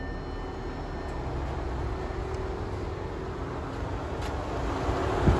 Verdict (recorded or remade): recorded